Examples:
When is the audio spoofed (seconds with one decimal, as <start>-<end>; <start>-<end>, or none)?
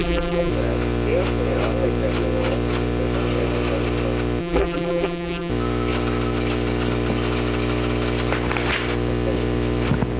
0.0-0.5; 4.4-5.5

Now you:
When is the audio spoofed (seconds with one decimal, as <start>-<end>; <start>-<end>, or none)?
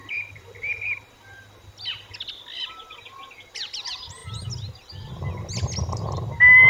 none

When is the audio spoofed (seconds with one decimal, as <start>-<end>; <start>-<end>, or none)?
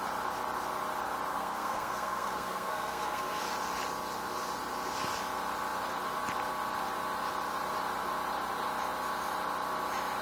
1.3-3.4